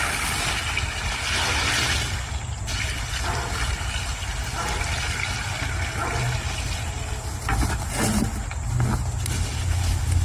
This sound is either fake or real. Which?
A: real